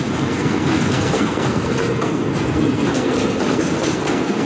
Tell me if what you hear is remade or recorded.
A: remade